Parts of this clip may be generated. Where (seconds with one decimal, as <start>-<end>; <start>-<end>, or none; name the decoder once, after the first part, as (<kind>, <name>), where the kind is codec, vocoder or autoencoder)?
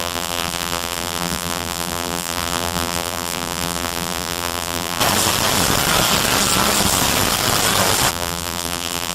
0.0-5.0 (vocoder, BigVGAN v2); 8.1-9.1